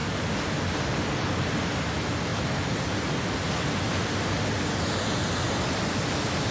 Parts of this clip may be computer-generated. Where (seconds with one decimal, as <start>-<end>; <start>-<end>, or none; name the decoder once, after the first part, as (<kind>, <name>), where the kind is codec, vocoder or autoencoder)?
none